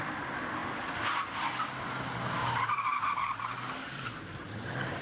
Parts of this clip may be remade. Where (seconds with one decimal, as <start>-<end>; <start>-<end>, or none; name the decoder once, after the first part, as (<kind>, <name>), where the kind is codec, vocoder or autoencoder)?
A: 2.4-4.1 (vocoder, BigVGAN v2)